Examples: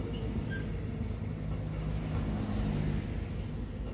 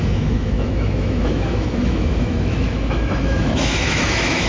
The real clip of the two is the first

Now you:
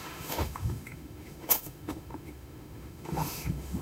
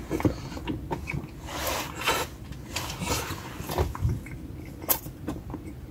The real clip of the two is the second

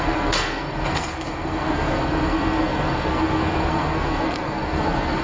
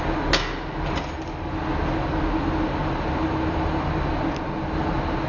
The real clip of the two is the second